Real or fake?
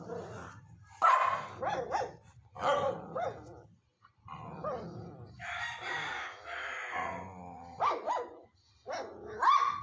real